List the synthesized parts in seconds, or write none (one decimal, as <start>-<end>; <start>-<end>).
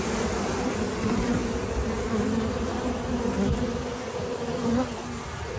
none